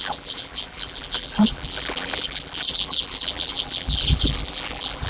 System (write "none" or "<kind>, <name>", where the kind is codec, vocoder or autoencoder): vocoder, BigVGAN v2